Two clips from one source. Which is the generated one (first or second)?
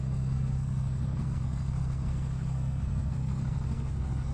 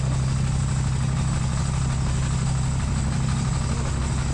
first